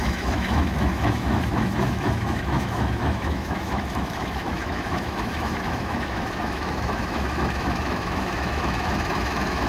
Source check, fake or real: fake